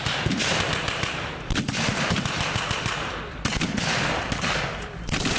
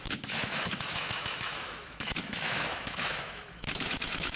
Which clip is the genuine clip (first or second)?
first